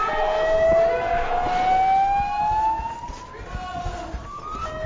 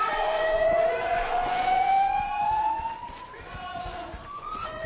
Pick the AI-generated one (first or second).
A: second